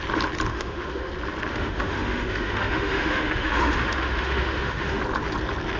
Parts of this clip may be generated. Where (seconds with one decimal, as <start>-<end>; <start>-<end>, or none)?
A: 0.5-1.1; 1.5-5.0